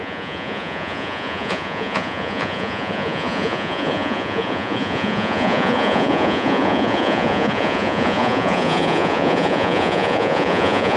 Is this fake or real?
fake